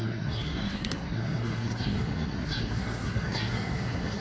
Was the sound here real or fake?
fake